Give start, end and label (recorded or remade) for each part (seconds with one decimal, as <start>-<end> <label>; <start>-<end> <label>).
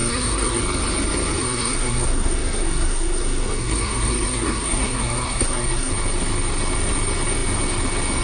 0.0-0.6 remade; 0.6-1.4 recorded; 1.4-5.9 remade; 5.9-8.2 recorded